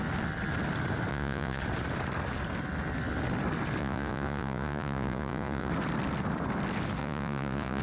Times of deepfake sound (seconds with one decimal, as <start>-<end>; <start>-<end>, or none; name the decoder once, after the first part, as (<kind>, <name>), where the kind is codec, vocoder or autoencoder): 1.1-1.6 (vocoder, Vocos); 3.8-5.7; 7.0-7.8